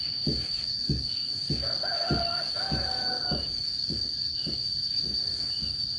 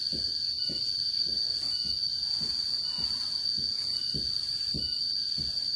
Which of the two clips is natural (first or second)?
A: second